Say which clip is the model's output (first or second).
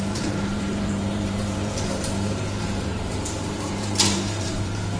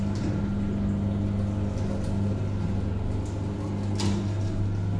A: first